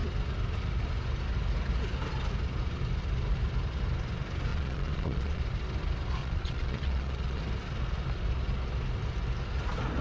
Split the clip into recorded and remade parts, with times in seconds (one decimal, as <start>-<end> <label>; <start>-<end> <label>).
0.0-4.5 recorded; 4.5-5.4 remade; 5.4-6.2 recorded; 6.2-7.4 remade; 7.4-10.0 recorded